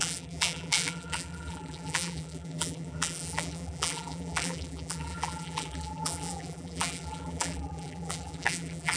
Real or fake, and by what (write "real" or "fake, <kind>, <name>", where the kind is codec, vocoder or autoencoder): fake, vocoder, BigVGAN v2